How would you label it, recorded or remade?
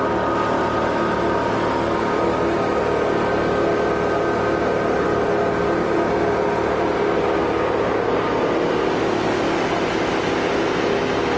recorded